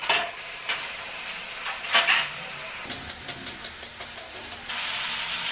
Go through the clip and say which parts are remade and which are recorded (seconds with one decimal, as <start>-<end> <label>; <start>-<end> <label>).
0.0-0.6 remade; 0.6-5.5 recorded